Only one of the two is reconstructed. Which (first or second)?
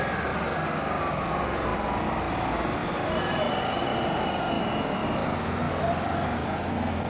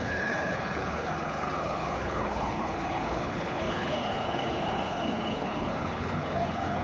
second